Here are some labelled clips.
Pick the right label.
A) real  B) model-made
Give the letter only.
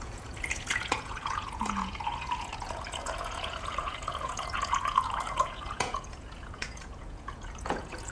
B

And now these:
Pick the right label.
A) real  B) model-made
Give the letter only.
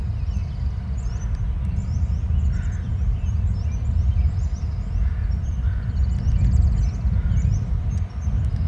A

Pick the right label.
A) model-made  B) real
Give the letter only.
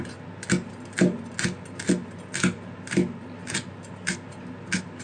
B